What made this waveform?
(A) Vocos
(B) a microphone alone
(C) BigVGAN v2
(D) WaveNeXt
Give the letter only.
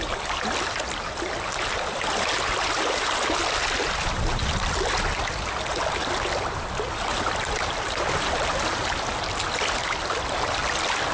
B